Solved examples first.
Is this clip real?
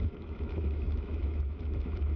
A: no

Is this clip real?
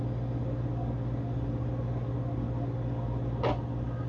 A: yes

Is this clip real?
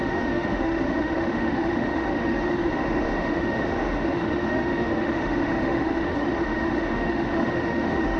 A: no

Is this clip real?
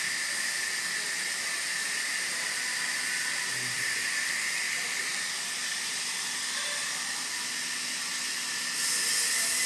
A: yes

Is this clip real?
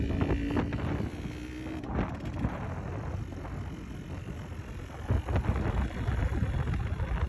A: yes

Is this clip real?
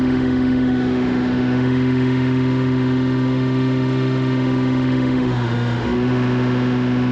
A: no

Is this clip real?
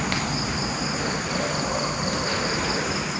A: yes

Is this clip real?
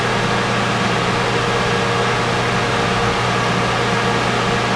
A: yes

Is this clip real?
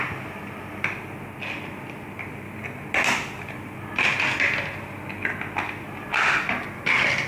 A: yes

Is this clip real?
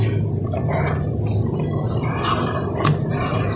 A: yes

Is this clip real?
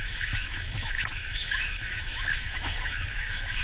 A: no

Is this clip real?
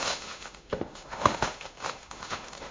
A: no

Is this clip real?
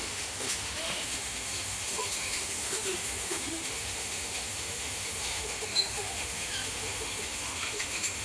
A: no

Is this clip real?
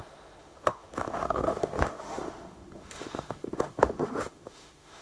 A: no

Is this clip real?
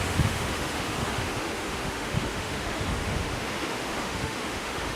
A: no